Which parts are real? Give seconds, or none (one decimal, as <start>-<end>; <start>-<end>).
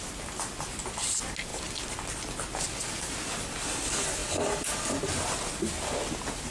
0.0-6.5